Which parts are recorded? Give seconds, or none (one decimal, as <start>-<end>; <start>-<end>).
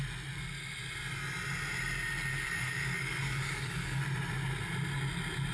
0.0-2.3; 4.0-5.5